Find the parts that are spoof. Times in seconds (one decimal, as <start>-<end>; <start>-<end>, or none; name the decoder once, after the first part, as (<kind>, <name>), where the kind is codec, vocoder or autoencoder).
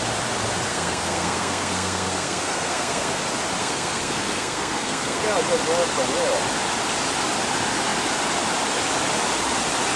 0.7-3.2 (codec, SNAC); 3.6-5.2